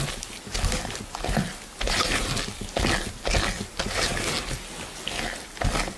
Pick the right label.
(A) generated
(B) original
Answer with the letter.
B